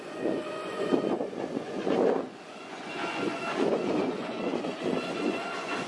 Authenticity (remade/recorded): remade